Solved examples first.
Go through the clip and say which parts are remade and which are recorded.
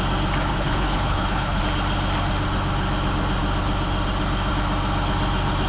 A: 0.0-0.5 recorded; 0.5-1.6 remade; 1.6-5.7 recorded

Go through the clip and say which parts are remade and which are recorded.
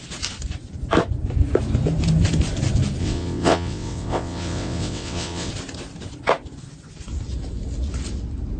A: 0.0-3.0 recorded; 3.0-5.5 remade; 5.5-8.6 recorded